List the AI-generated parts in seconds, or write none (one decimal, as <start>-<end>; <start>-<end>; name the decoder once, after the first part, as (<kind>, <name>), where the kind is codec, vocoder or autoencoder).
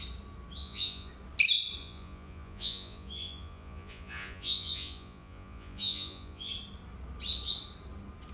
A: 0.6-1.1 (vocoder, Vocos); 1.8-6.5